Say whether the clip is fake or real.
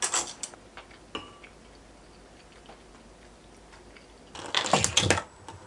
real